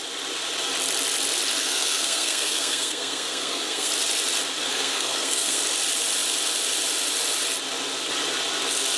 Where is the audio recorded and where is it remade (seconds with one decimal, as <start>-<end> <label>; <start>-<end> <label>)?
0.0-1.6 recorded; 1.6-3.9 remade; 3.9-4.7 recorded; 4.7-5.6 remade; 5.6-9.0 recorded